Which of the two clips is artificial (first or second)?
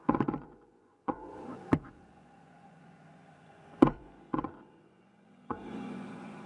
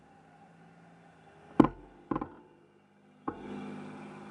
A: first